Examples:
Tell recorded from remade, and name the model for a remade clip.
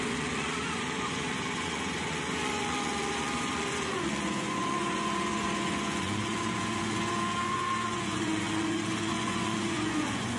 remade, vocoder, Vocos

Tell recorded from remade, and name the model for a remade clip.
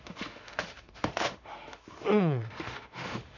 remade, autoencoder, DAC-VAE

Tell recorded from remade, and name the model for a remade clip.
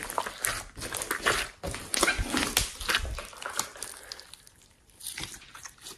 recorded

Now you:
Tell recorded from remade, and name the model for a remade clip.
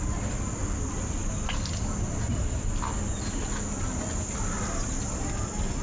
recorded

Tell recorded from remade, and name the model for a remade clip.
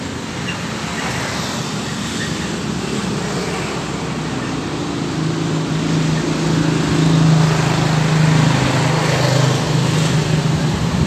recorded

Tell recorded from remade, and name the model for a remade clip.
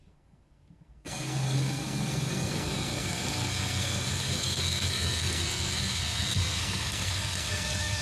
remade, codec, SNAC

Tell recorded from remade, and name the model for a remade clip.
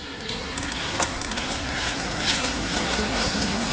remade, codec, SNAC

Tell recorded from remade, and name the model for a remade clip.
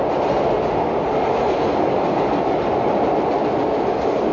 recorded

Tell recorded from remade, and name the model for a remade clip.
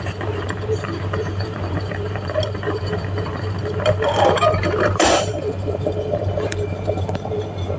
remade, vocoder, BigVGAN v2